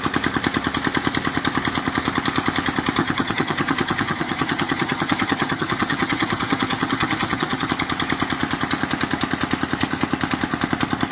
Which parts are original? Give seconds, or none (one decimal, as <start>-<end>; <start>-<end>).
0.0-3.0; 7.7-11.1